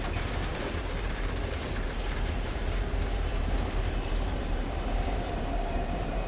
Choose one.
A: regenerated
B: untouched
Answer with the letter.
A